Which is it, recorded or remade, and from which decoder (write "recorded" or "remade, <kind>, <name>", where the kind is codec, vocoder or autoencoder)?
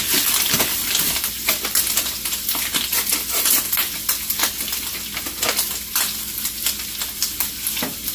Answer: recorded